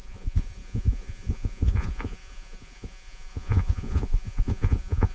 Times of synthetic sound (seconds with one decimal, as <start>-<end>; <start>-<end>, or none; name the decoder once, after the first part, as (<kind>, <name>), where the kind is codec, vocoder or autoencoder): 0.0-5.1 (vocoder, Vocos)